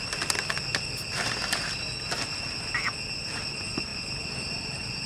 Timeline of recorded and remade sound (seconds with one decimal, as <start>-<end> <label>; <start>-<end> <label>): 0.0-0.7 remade; 0.7-3.5 recorded; 3.5-5.1 remade